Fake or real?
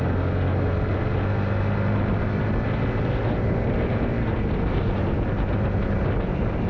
real